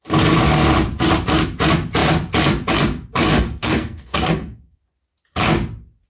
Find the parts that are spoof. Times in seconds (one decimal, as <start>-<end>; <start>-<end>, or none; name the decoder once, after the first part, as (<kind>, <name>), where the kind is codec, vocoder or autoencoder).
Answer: 3.3-4.8 (codec, SNAC)